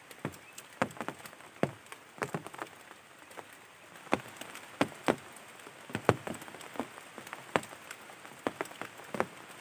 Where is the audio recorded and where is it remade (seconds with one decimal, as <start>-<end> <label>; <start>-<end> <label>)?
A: 0.0-9.6 recorded